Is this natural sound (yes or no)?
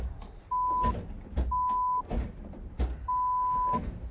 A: yes